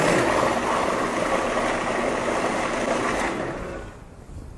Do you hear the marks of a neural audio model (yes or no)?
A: no